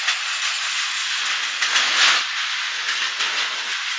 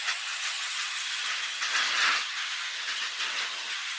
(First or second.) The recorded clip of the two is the first